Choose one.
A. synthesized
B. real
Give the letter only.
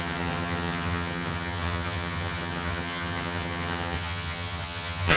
A